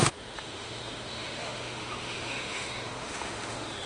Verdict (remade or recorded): remade